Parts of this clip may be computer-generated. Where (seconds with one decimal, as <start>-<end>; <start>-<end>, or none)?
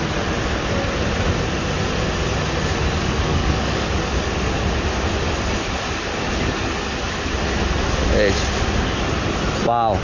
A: 3.3-4.0